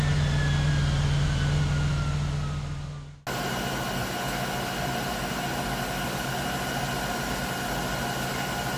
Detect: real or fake real